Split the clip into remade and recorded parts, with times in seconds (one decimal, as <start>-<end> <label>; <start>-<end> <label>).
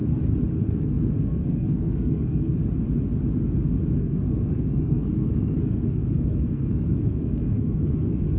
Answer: 0.0-0.5 recorded; 0.5-2.6 remade; 2.6-4.0 recorded; 4.0-8.4 remade